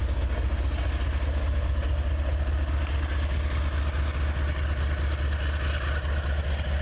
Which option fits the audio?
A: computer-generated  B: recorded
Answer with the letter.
B